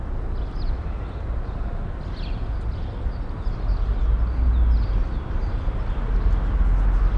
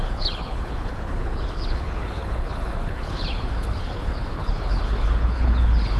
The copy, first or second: second